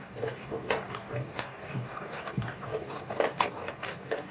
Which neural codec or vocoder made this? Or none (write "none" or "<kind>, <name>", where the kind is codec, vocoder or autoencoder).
codec, DAC